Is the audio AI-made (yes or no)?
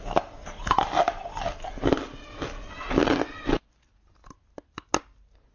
no